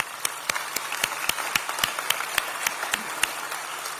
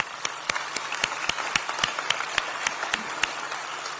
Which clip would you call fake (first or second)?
second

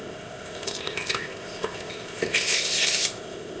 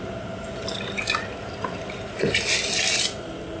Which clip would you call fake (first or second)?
first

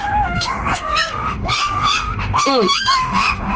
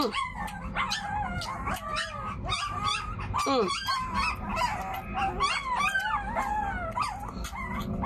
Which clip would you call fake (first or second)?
first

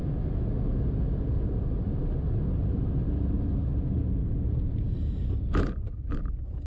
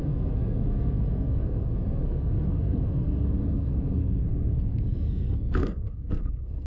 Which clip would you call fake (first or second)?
second